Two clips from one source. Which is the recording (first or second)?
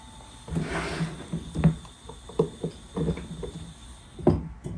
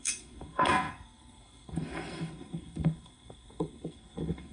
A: first